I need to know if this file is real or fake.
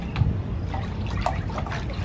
real